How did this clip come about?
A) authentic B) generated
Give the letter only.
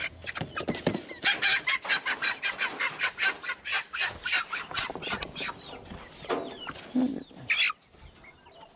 A